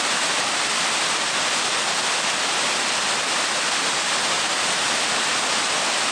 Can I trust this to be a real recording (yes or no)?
yes